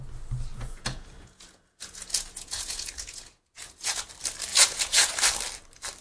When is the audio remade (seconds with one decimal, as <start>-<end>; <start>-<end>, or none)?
0.5-4.1; 4.5-5.1